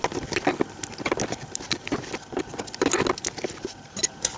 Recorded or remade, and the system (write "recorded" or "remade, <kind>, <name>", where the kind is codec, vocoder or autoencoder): recorded